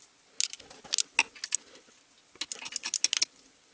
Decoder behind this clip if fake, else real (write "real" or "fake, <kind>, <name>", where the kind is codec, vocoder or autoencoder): real